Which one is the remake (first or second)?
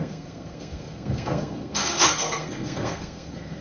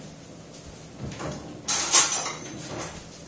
first